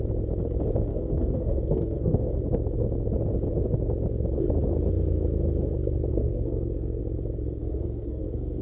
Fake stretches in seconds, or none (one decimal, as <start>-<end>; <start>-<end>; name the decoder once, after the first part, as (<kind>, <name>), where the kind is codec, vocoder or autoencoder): 0.9-2.4 (codec, SNAC); 6.1-7.0; 7.6-8.6